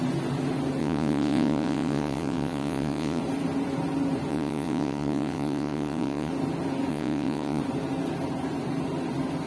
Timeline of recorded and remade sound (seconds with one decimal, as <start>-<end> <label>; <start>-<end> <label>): 0.0-0.8 recorded; 0.8-3.2 remade; 3.2-4.3 recorded; 4.3-6.3 remade; 6.3-6.9 recorded; 6.9-7.6 remade; 7.6-9.5 recorded